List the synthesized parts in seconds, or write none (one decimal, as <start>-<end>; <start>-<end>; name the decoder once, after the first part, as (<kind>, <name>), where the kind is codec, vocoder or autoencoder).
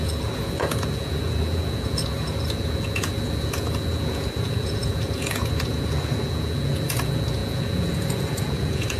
0.0-9.0 (vocoder, Vocos)